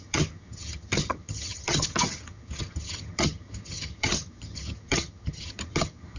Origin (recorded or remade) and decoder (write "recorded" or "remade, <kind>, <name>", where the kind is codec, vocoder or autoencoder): remade, vocoder, HiFi-GAN